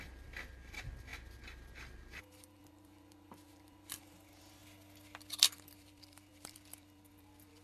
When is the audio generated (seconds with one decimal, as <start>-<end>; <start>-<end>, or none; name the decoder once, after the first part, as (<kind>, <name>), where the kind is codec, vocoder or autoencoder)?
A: 0.0-1.1 (vocoder, BigVGAN v2); 1.7-4.6; 5.3-7.6